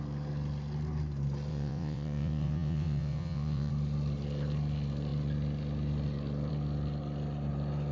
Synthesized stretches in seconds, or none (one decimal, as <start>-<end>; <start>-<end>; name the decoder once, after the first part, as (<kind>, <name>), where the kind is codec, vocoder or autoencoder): 1.5-3.7 (vocoder, WaveNeXt)